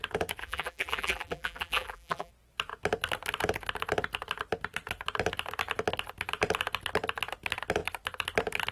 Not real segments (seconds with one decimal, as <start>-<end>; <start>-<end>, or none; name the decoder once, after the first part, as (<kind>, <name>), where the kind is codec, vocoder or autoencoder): 0.4-2.3 (vocoder, BigVGAN v2)